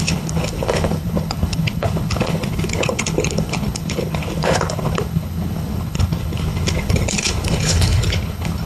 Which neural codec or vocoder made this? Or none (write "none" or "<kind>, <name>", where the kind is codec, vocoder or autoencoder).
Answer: codec, HILCodec